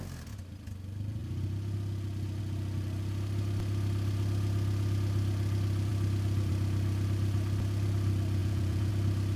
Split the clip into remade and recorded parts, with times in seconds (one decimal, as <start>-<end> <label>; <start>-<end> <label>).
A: 0.0-8.4 recorded; 8.4-8.9 remade; 8.9-9.4 recorded